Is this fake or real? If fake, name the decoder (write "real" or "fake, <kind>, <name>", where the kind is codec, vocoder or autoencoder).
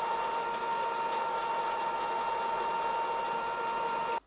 real